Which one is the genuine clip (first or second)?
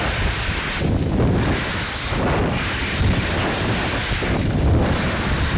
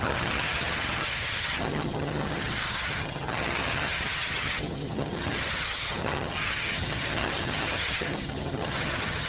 first